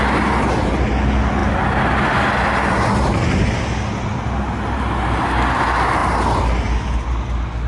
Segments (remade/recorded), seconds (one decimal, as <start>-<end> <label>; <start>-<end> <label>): 0.0-7.7 recorded